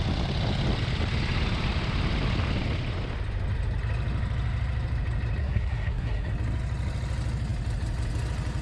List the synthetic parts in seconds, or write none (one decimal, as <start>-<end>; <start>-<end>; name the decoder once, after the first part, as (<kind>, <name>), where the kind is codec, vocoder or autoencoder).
5.4-6.3 (codec, SNAC)

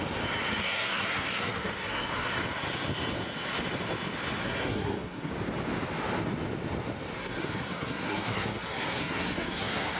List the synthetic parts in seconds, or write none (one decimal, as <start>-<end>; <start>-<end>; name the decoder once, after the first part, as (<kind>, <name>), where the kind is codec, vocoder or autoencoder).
0.5-2.4 (codec, SNAC); 4.4-5.3; 7.2-10.0

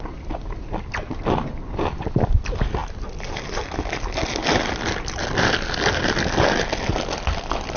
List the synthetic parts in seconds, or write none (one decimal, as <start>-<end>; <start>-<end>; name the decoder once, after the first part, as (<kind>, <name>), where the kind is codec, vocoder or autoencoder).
none

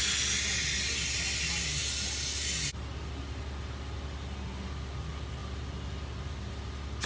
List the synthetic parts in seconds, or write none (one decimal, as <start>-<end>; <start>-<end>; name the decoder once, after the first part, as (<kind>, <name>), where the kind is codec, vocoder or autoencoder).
none

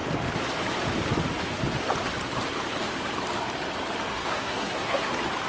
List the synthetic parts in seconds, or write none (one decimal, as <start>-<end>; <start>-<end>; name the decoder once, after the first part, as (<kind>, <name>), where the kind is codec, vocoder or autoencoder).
4.1-5.1 (codec, SNAC)

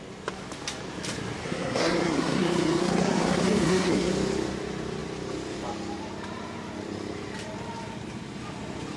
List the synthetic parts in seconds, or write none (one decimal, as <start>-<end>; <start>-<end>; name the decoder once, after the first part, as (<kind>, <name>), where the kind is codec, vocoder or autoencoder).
1.4-4.1 (codec, SNAC)

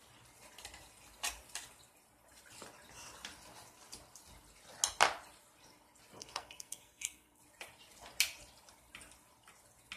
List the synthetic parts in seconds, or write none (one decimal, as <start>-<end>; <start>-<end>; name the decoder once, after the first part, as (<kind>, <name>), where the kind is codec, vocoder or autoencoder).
6.2-7.4 (codec, SNAC)